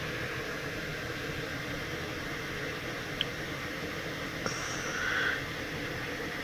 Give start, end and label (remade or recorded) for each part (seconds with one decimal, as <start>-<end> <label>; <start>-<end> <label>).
0.0-6.4 recorded